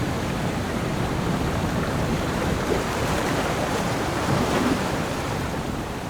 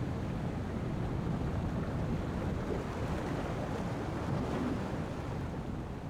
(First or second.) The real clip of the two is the second